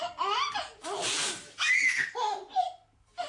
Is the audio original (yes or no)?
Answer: yes